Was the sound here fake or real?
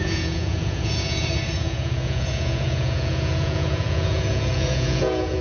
fake